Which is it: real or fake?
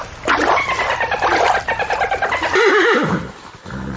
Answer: real